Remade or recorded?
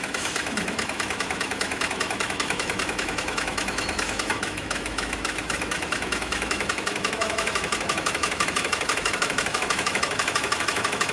remade